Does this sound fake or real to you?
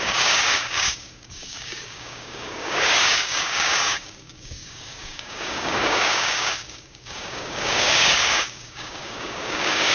fake